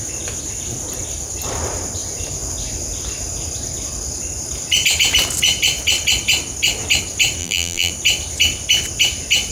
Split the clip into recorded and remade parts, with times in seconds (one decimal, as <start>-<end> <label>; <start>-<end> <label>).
0.0-7.4 recorded; 7.4-7.9 remade; 7.9-9.5 recorded